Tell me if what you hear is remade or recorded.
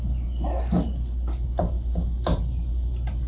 recorded